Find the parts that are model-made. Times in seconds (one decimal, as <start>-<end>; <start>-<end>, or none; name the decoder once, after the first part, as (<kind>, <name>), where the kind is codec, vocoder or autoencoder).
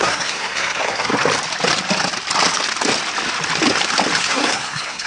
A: 0.0-1.1 (codec, SNAC); 4.2-5.1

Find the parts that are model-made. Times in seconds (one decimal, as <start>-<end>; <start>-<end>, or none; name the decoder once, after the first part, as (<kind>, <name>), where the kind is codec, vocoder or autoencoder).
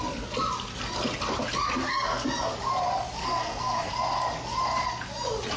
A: 3.2-3.9 (codec, SNAC)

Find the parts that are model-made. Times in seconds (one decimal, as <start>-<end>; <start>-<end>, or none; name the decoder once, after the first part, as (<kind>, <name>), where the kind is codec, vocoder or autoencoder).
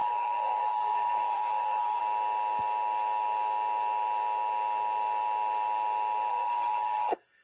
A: 0.0-2.0 (codec, SNAC); 6.3-7.4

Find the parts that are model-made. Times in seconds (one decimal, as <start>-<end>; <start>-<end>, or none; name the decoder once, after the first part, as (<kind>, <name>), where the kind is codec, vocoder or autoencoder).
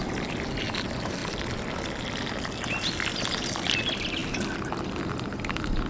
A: none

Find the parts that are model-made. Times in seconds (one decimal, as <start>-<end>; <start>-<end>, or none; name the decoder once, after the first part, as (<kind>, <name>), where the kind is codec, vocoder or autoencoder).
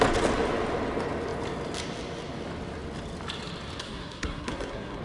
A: 3.8-5.0 (codec, SNAC)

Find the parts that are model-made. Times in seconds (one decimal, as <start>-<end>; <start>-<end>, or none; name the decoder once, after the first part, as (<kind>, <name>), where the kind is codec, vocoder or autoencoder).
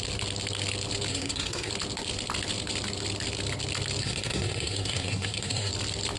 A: 1.1-1.7 (codec, SNAC); 4.0-5.7